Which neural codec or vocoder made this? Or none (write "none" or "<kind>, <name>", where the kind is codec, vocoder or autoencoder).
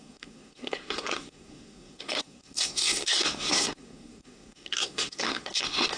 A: codec, SNAC